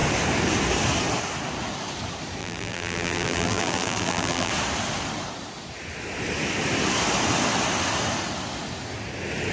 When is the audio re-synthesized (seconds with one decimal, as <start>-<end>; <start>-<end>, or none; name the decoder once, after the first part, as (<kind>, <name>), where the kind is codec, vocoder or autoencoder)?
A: 2.4-4.5 (vocoder, BigVGAN v2)